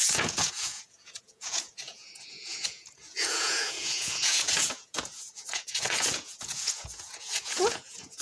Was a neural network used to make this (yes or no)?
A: yes